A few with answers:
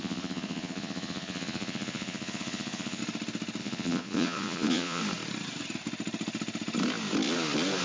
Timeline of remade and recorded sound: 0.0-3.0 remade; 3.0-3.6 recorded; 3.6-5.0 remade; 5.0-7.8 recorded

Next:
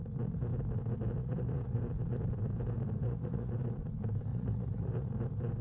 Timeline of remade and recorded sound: 0.0-1.2 recorded; 1.2-1.8 remade; 1.8-3.0 recorded; 3.0-3.5 remade; 3.5-4.3 recorded; 4.3-5.1 remade; 5.1-5.6 recorded

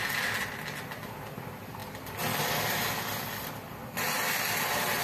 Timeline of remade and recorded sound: 0.0-5.0 recorded